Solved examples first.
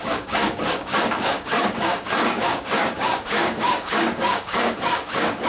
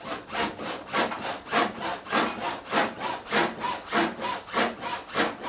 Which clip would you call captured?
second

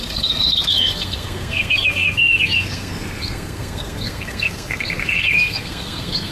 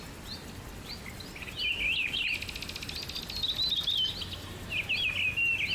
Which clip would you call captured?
second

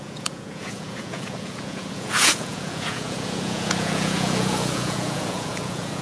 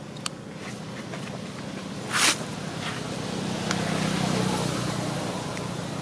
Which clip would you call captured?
second